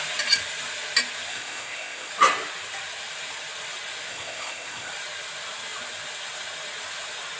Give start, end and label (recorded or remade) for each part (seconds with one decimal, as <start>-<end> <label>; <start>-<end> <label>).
0.0-1.3 recorded; 1.3-2.1 remade; 2.1-4.1 recorded; 4.1-4.9 remade; 4.9-7.4 recorded